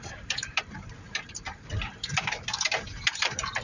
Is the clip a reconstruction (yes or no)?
yes